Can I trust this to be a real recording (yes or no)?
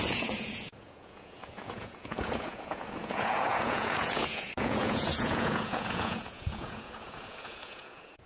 no